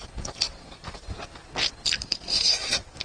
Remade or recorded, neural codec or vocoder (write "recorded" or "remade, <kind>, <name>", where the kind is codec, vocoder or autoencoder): recorded